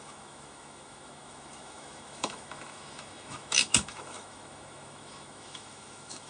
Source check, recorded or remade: remade